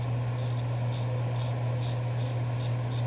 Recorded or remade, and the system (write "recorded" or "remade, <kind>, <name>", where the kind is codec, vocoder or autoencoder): recorded